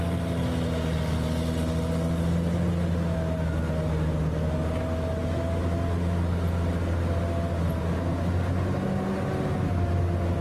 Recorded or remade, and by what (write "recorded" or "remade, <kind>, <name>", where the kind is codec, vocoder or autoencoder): recorded